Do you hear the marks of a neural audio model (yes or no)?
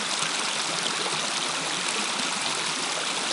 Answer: no